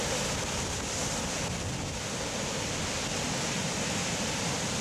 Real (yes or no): yes